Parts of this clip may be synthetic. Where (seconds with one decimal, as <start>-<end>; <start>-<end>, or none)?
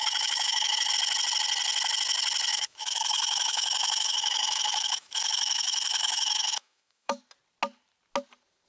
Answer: 0.0-0.9; 2.5-7.2